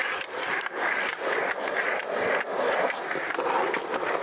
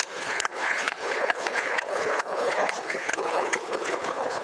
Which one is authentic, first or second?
first